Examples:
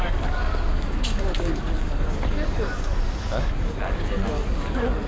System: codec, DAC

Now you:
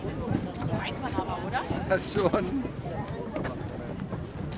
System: none